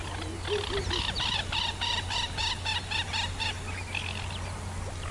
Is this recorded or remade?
recorded